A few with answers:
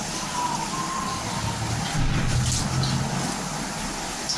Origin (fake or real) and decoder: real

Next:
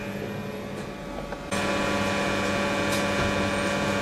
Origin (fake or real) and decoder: real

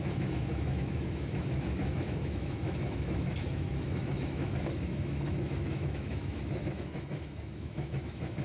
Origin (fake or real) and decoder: fake, autoencoder, DAC-VAE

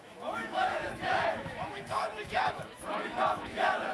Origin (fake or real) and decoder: fake, autoencoder, DAC-VAE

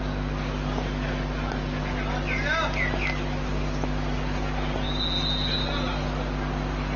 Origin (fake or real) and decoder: real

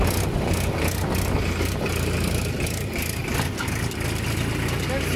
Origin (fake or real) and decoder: real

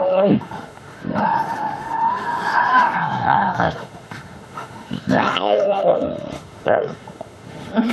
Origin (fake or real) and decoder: fake, autoencoder, DAC-VAE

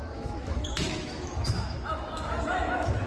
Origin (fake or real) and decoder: fake, autoencoder, DAC-VAE